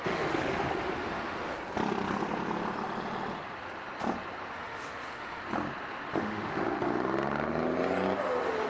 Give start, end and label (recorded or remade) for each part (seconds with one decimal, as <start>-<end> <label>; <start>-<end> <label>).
0.0-1.6 remade; 1.6-4.5 recorded; 4.5-5.4 remade; 5.4-6.2 recorded; 6.2-6.9 remade; 6.9-8.7 recorded